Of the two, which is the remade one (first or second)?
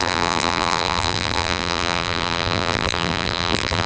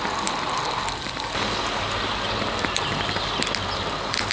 first